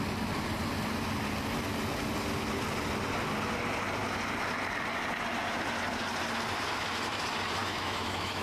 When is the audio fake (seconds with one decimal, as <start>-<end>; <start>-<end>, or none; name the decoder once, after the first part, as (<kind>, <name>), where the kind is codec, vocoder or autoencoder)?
7.6-8.4 (autoencoder, DAC-VAE)